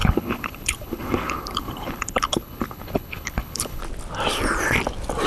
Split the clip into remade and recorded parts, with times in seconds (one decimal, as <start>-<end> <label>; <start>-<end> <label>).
0.0-3.8 remade; 3.8-5.3 recorded